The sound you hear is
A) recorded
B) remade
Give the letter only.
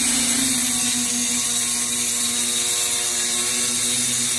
A